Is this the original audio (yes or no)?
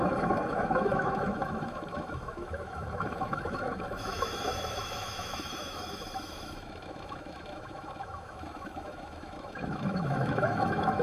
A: no